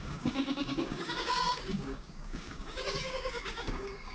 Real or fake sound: fake